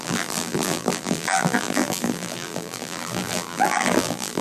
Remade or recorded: remade